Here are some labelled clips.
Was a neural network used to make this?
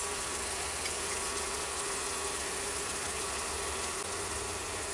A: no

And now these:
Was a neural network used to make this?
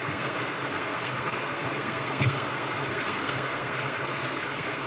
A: yes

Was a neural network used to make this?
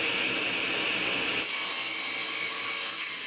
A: no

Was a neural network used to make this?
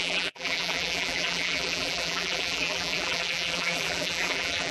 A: yes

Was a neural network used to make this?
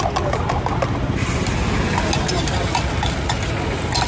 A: no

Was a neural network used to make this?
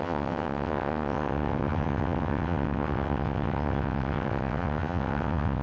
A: yes